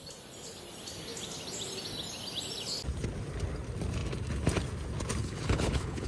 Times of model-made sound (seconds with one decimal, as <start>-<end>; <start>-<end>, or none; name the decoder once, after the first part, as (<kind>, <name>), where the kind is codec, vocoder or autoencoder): 5.2-6.1 (codec, HILCodec)